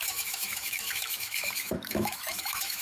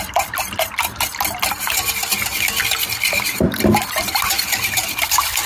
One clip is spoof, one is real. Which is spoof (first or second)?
first